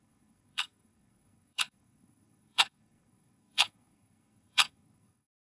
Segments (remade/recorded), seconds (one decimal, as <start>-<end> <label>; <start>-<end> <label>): 0.0-5.6 remade